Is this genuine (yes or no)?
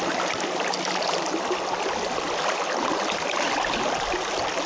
yes